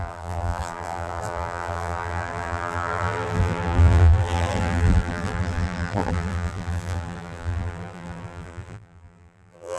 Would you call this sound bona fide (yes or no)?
no